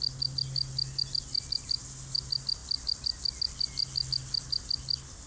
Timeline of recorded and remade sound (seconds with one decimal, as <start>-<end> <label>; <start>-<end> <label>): 0.0-5.3 recorded